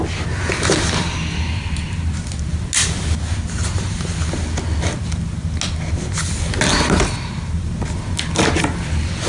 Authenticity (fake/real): real